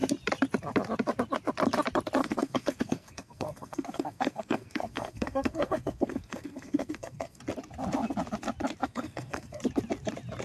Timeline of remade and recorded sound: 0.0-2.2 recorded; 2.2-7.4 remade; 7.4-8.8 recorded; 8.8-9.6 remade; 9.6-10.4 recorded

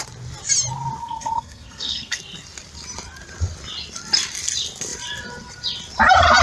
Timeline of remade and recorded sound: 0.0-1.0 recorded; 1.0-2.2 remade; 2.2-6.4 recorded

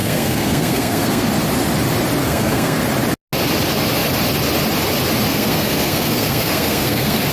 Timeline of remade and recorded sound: 0.0-1.3 remade; 1.3-2.2 recorded; 2.2-2.8 remade; 2.8-5.3 recorded; 5.3-7.3 remade

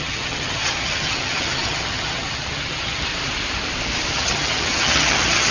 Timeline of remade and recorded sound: 0.0-3.1 remade; 3.1-4.1 recorded; 4.1-5.5 remade

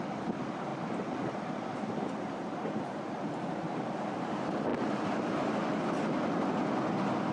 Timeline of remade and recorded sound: 0.0-0.7 recorded; 0.7-4.3 remade; 4.3-4.7 recorded; 4.7-5.9 remade; 5.9-7.3 recorded

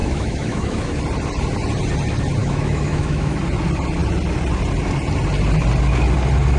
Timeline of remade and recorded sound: 0.0-1.0 remade; 1.0-2.4 recorded; 2.4-3.4 remade; 3.4-6.6 recorded